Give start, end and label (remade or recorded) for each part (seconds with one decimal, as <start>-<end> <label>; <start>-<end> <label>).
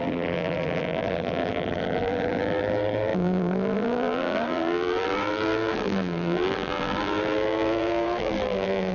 0.0-8.9 remade